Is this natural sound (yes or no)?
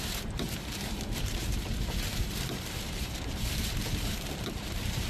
no